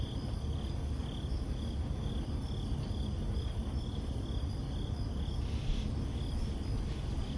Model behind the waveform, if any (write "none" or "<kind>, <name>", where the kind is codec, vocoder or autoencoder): none